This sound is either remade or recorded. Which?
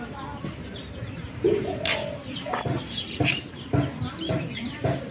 recorded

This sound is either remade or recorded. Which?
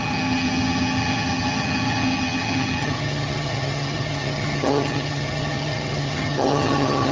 remade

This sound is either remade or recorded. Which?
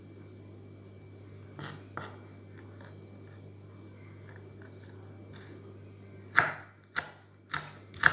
recorded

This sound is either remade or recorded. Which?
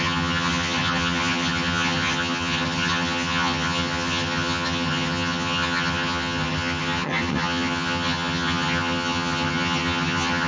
remade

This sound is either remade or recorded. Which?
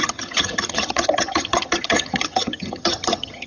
remade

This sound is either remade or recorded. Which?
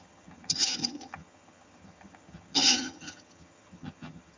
remade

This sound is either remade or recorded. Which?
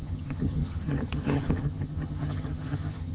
remade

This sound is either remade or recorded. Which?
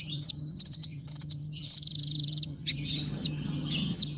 remade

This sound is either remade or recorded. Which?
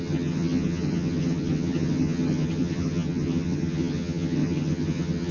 remade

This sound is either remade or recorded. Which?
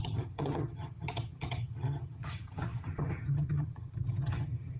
remade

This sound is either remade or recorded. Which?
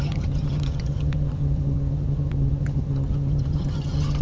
remade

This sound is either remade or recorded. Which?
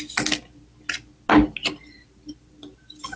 recorded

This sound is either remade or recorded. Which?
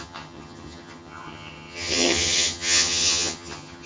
remade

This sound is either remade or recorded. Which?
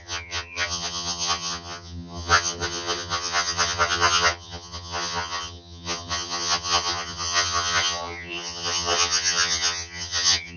remade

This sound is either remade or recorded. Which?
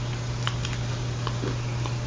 recorded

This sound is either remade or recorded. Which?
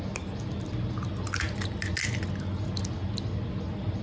recorded